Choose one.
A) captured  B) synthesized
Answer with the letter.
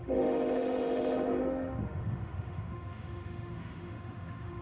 B